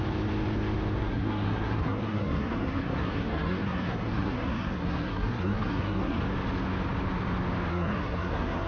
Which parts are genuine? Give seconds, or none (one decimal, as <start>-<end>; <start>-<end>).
0.0-1.0; 6.2-7.7